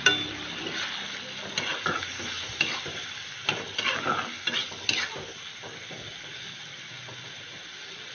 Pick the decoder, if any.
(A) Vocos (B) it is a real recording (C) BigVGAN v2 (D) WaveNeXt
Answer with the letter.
B